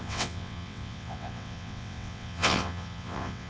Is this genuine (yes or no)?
no